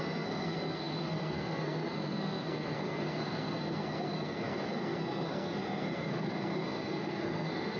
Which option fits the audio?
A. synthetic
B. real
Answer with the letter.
A